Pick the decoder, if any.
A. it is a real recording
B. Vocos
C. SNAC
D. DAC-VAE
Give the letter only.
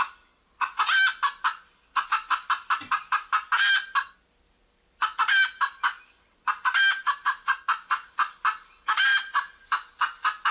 A